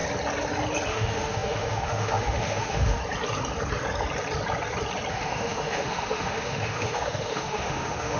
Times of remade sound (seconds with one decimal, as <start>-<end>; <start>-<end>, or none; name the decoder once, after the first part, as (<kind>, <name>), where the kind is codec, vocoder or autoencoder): 0.9-3.0 (autoencoder, DAC-VAE); 5.1-8.2